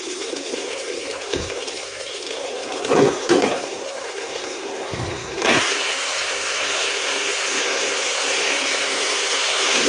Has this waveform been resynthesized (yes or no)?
yes